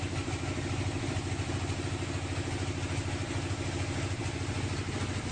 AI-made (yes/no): no